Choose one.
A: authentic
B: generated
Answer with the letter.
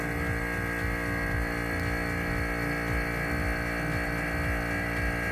A